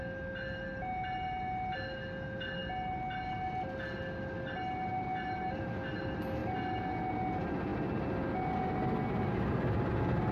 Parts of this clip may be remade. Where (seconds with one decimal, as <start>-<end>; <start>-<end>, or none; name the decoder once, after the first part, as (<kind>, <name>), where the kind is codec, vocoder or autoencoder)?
none